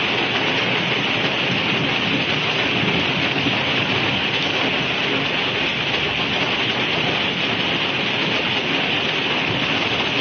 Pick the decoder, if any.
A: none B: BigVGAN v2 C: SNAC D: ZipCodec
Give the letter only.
A